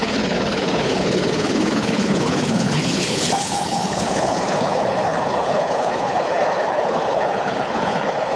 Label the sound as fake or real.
fake